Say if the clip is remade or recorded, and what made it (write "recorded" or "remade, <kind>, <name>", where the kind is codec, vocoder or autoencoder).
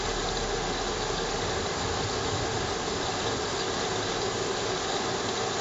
recorded